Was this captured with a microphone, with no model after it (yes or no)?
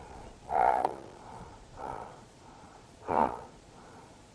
no